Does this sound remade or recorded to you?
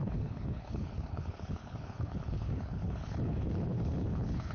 remade